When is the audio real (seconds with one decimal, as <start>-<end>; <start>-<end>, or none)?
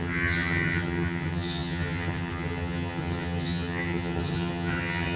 none